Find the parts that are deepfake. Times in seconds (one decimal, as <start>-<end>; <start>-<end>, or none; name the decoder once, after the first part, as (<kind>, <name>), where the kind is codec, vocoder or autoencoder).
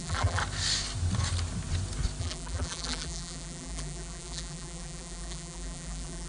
0.0-0.4 (vocoder, BigVGAN v2); 2.2-6.3